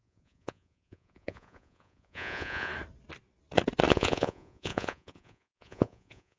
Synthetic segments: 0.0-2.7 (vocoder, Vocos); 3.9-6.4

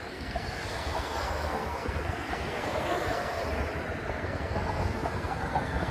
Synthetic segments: 0.0-3.4 (codec, SNAC); 4.1-5.9

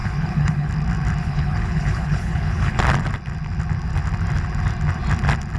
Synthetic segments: 0.0-0.7 (codec, HILCodec); 1.2-2.8